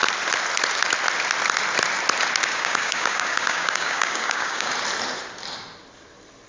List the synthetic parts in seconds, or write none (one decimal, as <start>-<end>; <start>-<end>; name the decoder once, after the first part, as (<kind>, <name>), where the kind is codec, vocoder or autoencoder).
2.4-4.7 (codec, DAC)